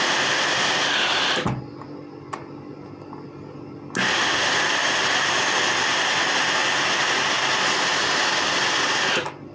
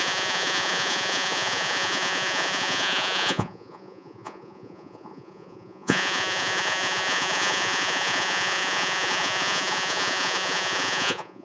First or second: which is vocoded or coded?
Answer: second